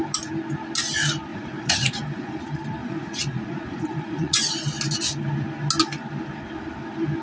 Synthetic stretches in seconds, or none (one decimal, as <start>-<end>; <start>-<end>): 1.3-2.3; 2.8-4.4